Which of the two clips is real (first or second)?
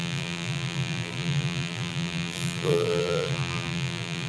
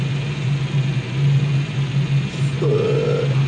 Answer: second